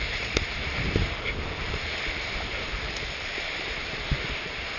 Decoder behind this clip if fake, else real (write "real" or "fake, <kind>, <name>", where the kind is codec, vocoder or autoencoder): fake, vocoder, BigVGAN v2